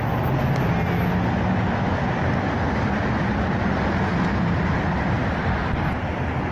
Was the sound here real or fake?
real